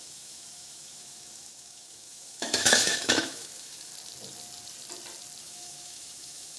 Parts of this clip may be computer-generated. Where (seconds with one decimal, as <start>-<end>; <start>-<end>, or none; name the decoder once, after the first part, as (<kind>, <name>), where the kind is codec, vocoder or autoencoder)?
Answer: 0.0-3.9 (autoencoder, DAC-VAE); 5.4-6.6